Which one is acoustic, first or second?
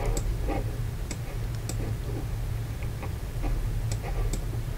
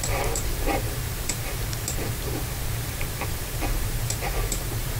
first